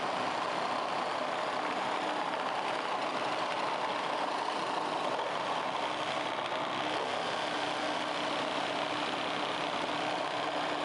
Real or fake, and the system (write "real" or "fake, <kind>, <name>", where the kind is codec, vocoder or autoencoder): real